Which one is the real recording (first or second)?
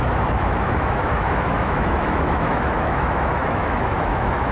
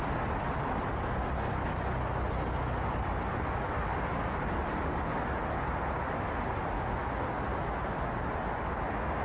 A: second